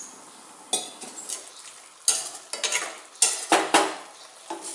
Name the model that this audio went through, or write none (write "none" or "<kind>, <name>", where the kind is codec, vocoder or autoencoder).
none